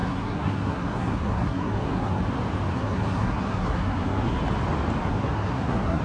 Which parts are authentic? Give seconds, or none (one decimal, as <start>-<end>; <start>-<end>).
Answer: 2.2-2.7; 4.4-5.0